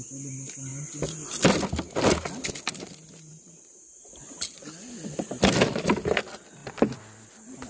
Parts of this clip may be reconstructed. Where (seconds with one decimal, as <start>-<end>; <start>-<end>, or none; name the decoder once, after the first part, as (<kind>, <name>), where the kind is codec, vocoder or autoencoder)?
none